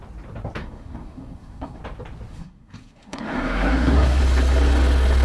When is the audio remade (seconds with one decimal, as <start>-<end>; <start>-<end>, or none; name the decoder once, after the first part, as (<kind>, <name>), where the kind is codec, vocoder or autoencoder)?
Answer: 0.6-1.8 (codec, SNAC); 2.3-4.2